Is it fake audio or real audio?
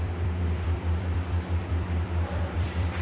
fake